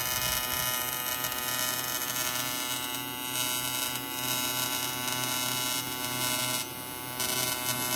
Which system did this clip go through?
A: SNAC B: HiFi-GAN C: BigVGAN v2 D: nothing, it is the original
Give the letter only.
D